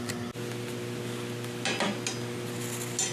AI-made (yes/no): no